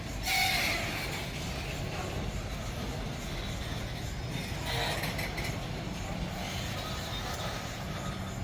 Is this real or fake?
real